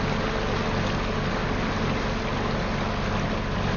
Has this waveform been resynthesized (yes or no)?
no